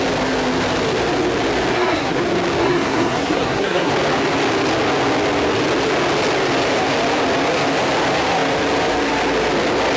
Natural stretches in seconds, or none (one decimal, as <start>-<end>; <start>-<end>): 0.0-1.7; 2.2-2.6; 3.9-10.0